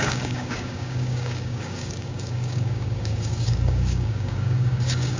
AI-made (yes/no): yes